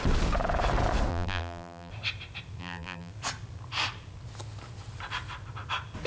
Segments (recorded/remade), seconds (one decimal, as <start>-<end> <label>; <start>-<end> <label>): 0.0-1.1 recorded; 1.1-1.9 remade; 1.9-2.6 recorded; 2.6-3.1 remade; 3.1-6.1 recorded